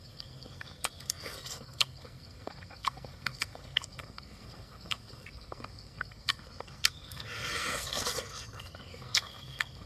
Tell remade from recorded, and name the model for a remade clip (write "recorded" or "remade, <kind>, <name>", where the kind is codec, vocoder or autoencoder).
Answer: remade, codec, SNAC